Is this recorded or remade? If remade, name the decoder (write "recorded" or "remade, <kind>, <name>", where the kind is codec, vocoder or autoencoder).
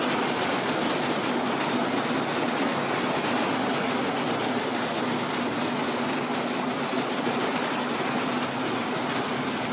recorded